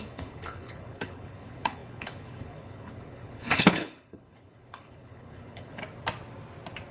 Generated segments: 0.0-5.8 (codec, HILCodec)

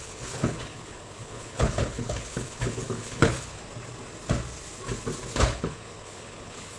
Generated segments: 0.0-3.6 (codec, HILCodec); 5.3-6.8